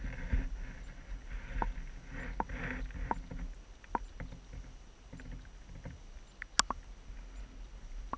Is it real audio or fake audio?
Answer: real